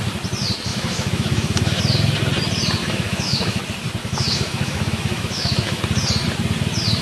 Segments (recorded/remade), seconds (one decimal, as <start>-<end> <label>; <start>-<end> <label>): 0.0-0.7 recorded; 0.7-1.8 remade; 1.8-2.8 recorded; 2.8-3.6 remade; 3.6-4.0 recorded; 4.0-5.8 remade; 5.8-7.0 recorded